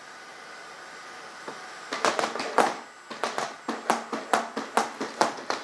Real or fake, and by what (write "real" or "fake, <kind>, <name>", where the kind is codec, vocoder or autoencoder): real